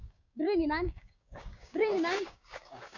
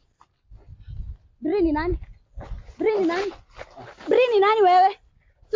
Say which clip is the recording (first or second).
second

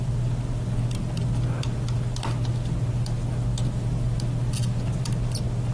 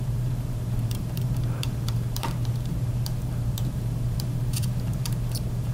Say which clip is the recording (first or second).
first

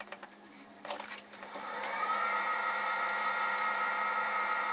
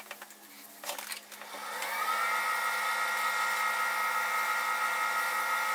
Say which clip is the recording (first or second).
second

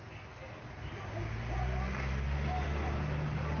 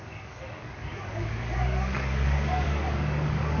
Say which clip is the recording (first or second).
first